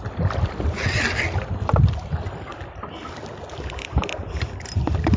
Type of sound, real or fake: real